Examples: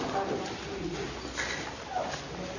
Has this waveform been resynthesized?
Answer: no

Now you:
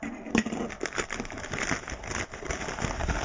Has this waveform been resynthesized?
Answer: no